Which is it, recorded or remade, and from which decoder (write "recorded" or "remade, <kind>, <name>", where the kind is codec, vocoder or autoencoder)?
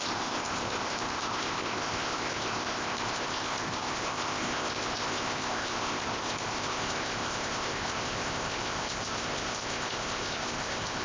remade, codec, ZipCodec